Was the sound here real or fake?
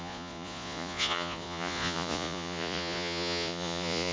fake